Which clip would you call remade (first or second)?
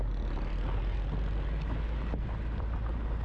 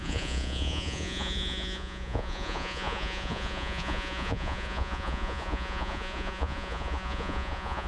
second